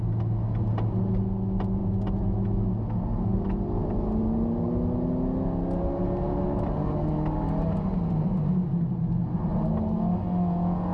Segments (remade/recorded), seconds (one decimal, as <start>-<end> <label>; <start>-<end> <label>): 0.0-10.9 recorded